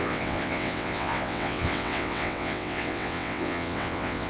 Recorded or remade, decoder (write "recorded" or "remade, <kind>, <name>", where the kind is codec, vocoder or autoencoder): remade, vocoder, WaveNeXt